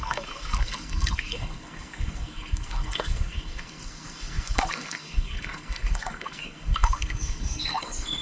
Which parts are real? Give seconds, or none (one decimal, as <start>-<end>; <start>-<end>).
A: none

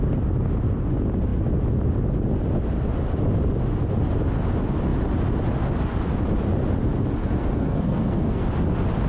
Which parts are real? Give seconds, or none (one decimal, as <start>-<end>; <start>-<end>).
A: 0.0-7.2; 8.5-9.1

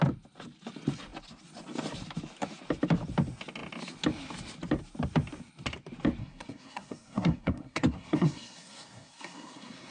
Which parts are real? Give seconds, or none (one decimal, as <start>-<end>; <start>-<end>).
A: 0.0-6.2